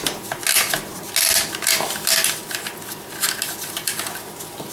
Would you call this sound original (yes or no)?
yes